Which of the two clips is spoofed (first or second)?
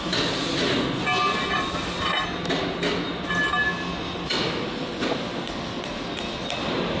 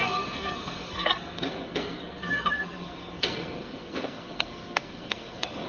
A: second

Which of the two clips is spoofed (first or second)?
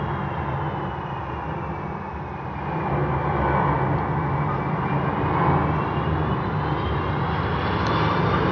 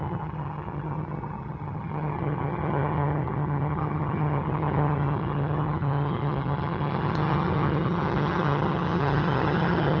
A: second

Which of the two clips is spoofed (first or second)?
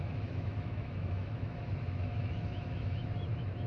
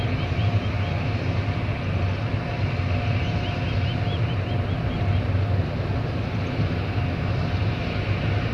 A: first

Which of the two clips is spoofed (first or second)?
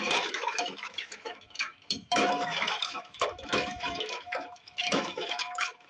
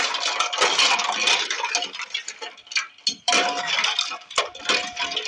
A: first